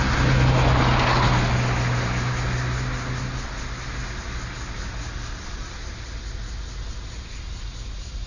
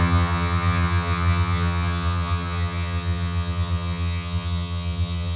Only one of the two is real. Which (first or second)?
first